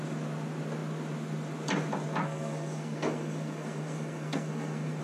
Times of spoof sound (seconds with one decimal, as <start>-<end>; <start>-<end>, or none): 2.2-5.0